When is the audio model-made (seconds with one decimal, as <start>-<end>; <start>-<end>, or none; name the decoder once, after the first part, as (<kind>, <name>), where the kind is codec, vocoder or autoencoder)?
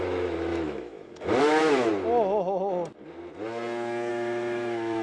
0.0-1.9 (autoencoder, DAC-VAE); 4.1-5.0